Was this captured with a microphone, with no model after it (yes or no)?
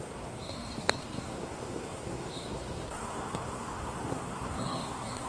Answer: no